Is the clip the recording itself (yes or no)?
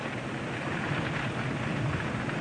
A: yes